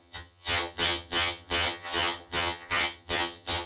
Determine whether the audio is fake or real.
fake